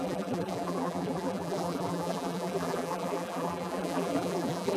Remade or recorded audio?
remade